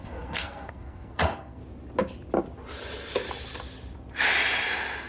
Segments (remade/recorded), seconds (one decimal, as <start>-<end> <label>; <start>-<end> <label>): 0.0-1.6 remade; 1.6-5.1 recorded